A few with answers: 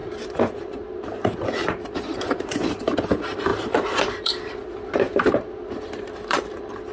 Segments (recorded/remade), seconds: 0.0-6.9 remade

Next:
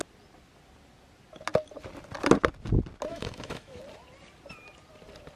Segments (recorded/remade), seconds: 0.0-3.1 recorded; 3.1-3.8 remade; 3.8-5.4 recorded

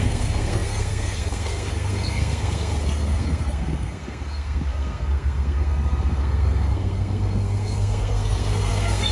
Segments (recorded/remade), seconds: 0.0-9.1 remade